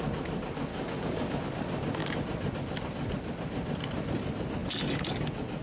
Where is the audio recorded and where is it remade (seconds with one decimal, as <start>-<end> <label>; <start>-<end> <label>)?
0.0-0.7 recorded; 0.7-1.4 remade; 1.4-5.6 recorded